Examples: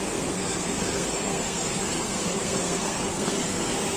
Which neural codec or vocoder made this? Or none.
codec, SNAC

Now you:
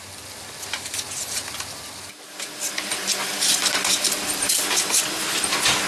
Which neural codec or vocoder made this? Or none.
none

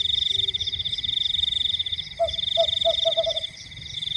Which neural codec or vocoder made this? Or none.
none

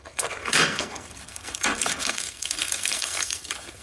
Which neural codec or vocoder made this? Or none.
codec, SNAC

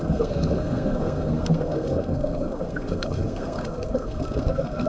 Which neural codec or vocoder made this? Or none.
codec, SNAC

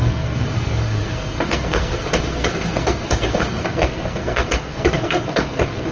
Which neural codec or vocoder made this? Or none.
codec, SNAC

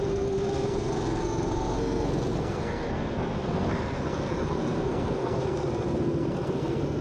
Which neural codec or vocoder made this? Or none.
codec, SNAC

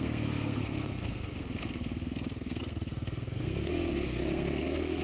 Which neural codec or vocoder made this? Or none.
codec, SNAC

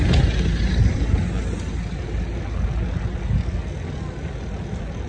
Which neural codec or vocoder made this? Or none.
none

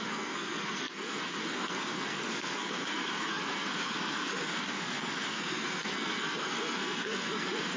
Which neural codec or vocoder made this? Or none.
codec, SNAC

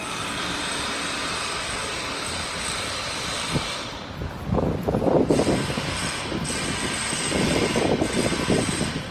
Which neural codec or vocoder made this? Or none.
none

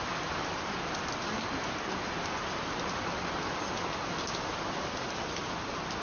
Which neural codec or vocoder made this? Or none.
none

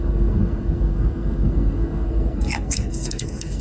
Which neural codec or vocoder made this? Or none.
codec, SNAC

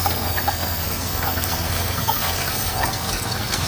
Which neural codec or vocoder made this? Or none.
codec, SNAC